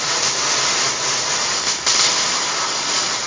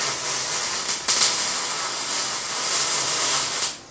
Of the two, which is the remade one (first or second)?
first